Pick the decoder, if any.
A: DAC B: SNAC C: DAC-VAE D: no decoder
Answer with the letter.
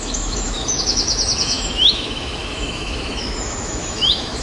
C